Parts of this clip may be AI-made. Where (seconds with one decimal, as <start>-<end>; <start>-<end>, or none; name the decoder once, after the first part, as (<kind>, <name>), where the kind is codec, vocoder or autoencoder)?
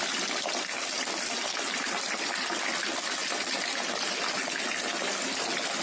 none